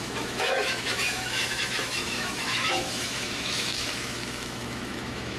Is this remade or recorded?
remade